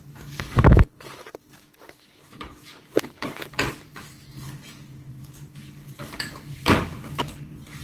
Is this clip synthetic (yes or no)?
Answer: yes